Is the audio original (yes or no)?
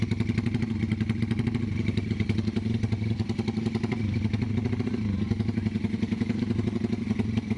yes